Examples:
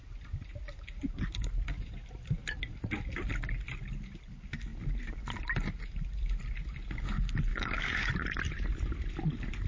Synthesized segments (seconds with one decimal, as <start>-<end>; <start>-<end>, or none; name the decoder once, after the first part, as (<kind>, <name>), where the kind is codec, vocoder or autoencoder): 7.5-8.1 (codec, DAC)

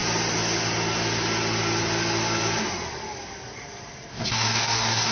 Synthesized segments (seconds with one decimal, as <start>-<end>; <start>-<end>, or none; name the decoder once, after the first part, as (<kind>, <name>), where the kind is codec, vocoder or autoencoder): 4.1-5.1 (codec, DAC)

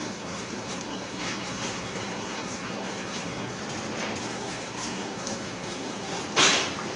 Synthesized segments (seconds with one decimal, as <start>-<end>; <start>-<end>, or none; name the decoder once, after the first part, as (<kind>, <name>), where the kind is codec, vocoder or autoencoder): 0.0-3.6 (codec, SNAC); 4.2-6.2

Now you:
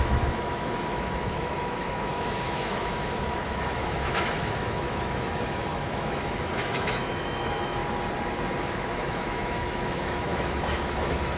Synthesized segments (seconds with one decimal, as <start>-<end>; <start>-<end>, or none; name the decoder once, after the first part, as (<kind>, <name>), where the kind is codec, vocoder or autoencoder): 0.0-7.8 (autoencoder, DAC-VAE); 8.6-11.4

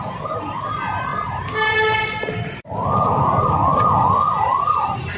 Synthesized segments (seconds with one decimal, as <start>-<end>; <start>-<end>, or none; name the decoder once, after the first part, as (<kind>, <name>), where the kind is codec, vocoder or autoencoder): 0.0-1.1 (vocoder, BigVGAN v2); 2.5-3.7; 4.3-5.2

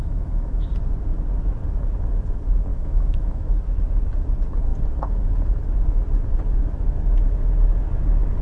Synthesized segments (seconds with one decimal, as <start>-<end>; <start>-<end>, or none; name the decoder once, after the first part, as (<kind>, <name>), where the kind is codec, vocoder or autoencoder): 0.0-0.7 (autoencoder, DAC-VAE); 2.7-3.5

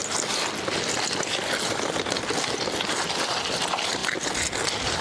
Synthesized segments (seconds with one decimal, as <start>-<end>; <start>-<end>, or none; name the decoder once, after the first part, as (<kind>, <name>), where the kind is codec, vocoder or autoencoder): none